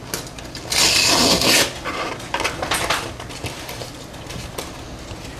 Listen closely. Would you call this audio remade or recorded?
recorded